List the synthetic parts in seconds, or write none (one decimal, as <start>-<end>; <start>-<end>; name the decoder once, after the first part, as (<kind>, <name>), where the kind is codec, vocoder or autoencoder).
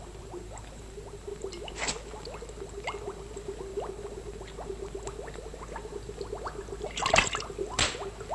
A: none